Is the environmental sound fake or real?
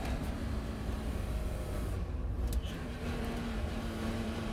fake